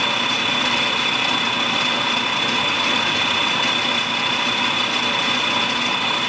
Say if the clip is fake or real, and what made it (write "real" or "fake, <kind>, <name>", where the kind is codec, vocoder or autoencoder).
real